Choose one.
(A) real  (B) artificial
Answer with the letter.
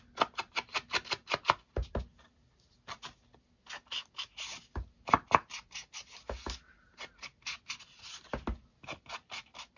A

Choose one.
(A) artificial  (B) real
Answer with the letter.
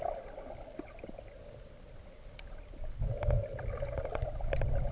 B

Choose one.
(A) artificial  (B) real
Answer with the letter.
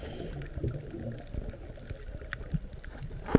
B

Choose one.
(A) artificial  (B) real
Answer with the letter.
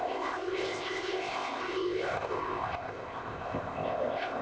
A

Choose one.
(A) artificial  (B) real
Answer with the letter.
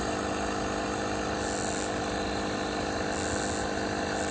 B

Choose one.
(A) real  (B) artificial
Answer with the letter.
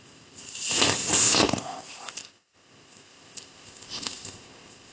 B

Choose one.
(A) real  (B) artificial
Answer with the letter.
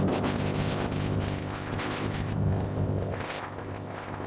B